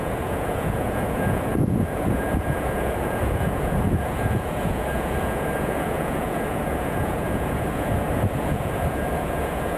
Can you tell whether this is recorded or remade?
remade